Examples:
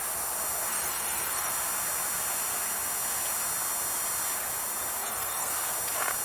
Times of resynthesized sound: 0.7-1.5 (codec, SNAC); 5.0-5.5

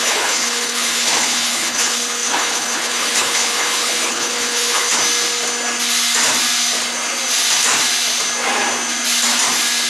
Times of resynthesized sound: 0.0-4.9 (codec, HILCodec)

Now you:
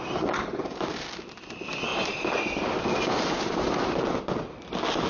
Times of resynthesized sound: none